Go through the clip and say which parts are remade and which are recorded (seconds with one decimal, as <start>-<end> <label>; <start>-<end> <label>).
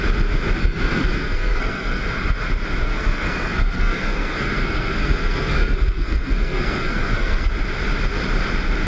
0.0-0.6 recorded; 0.6-2.0 remade; 2.0-2.8 recorded; 2.8-7.5 remade; 7.5-8.9 recorded